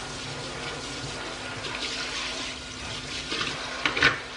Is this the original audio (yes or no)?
yes